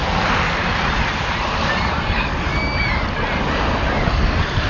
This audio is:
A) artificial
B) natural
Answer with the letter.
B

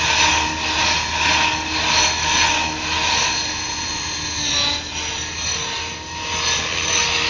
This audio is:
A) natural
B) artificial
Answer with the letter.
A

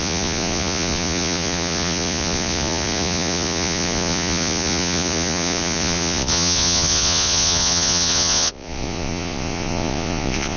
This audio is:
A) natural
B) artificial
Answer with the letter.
B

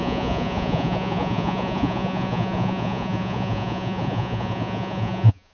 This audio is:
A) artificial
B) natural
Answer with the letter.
A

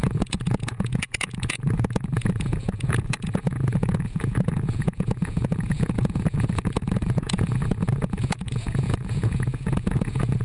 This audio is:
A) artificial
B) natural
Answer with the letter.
A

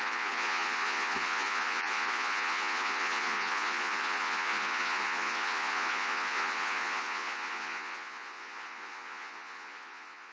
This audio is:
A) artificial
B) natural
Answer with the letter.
A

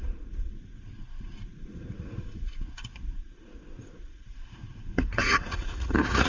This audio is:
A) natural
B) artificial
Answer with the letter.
B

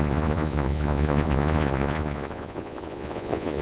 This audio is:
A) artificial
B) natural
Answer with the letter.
A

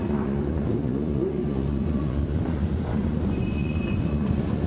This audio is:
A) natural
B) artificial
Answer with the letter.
B